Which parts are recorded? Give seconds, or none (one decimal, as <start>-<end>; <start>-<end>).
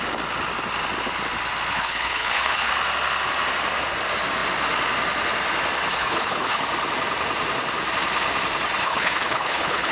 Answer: 0.0-1.7; 2.7-5.9; 6.6-8.8